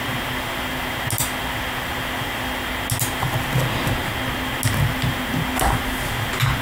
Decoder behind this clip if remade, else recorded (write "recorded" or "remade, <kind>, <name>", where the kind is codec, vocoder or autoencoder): recorded